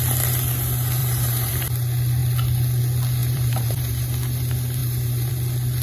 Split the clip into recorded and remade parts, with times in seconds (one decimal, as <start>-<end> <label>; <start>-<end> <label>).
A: 0.0-1.0 recorded; 1.0-1.5 remade; 1.5-3.2 recorded; 3.2-4.1 remade; 4.1-4.8 recorded; 4.8-5.3 remade; 5.3-5.8 recorded